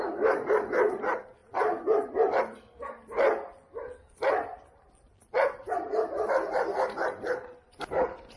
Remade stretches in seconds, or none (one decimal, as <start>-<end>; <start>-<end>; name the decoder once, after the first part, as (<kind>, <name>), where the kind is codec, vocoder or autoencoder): none